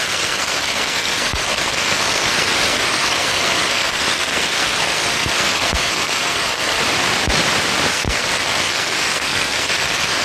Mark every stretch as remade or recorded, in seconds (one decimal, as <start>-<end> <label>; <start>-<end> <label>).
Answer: 0.0-6.8 remade; 6.8-7.9 recorded; 7.9-10.2 remade